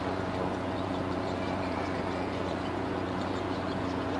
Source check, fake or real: fake